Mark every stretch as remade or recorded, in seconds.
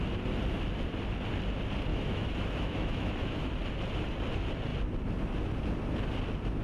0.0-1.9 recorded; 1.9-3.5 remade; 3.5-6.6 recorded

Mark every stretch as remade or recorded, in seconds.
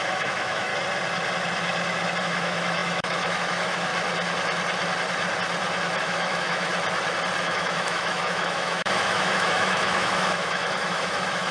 0.0-0.7 remade; 0.7-2.2 recorded; 2.2-3.9 remade; 3.9-6.0 recorded; 6.0-6.7 remade; 6.7-7.4 recorded; 7.4-11.5 remade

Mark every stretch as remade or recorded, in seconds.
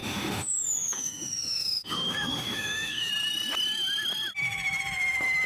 0.0-3.1 remade; 3.1-5.5 recorded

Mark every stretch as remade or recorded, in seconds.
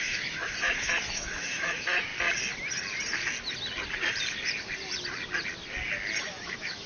0.0-2.1 remade; 2.1-6.2 recorded; 6.2-6.9 remade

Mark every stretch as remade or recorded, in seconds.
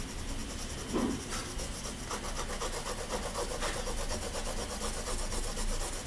0.0-6.1 recorded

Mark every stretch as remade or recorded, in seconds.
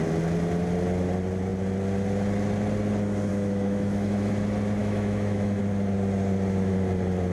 0.0-3.3 recorded; 3.3-4.3 remade; 4.3-4.8 recorded; 4.8-5.6 remade; 5.6-7.3 recorded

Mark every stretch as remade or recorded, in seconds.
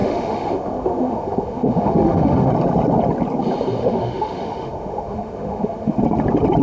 0.0-2.5 remade; 2.5-3.8 recorded; 3.8-6.0 remade; 6.0-6.6 recorded